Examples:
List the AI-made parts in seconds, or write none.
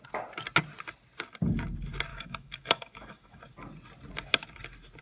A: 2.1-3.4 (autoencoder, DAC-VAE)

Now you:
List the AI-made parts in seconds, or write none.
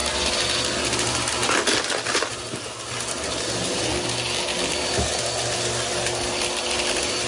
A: none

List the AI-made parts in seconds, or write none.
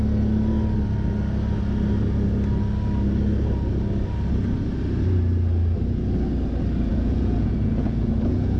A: 6.9-8.6 (vocoder, Vocos)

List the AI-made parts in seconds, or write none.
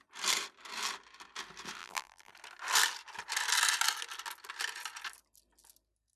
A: 1.8-2.3 (vocoder, BigVGAN v2)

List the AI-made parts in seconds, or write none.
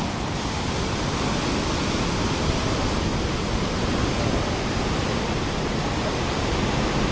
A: none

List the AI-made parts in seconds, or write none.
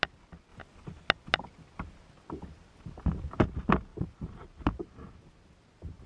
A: none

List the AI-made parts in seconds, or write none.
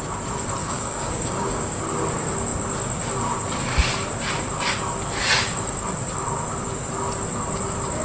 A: 0.6-1.8 (codec, DAC)